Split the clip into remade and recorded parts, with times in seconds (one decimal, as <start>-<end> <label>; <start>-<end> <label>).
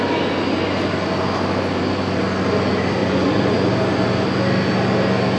0.0-3.0 recorded; 3.0-3.7 remade; 3.7-5.4 recorded